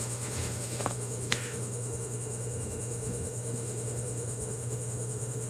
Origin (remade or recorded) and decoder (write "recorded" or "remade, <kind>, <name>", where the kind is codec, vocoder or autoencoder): remade, autoencoder, DAC-VAE